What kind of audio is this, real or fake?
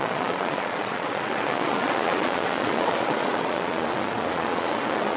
fake